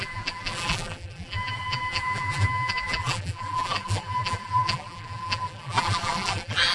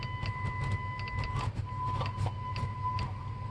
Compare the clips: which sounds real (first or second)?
second